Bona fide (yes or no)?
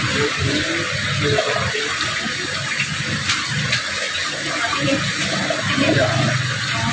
yes